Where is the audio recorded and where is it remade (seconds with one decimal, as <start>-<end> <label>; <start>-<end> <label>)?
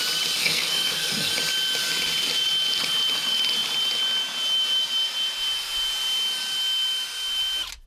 0.0-0.4 recorded; 0.4-1.3 remade; 1.3-7.9 recorded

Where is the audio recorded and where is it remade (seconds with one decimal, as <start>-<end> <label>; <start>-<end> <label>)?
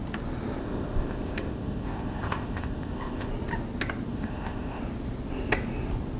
0.0-0.6 recorded; 0.6-3.3 remade; 3.3-4.1 recorded; 4.1-4.8 remade; 4.8-6.2 recorded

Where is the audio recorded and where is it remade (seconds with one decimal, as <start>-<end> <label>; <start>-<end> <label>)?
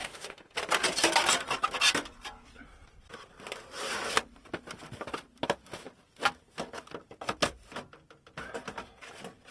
0.0-0.5 remade; 0.5-9.5 recorded